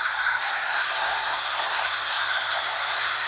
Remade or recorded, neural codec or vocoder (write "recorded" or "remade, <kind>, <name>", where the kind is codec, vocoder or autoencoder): remade, codec, SNAC